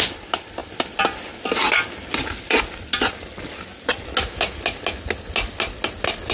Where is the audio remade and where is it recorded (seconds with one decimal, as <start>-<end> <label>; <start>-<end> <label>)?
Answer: 0.0-6.3 recorded